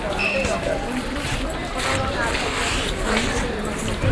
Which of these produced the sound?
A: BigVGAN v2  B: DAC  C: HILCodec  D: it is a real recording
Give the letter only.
D